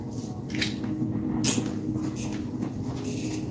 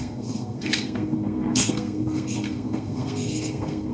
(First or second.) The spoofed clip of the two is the second